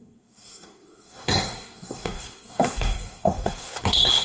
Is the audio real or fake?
fake